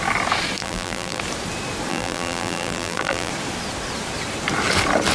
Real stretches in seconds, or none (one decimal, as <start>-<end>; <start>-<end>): 0.0-0.6; 1.2-1.9; 3.3-5.1